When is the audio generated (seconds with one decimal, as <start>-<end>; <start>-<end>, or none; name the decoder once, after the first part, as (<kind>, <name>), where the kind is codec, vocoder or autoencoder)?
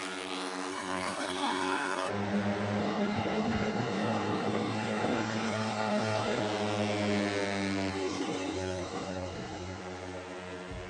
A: 0.7-2.1 (codec, SNAC); 2.8-6.4; 7.9-9.8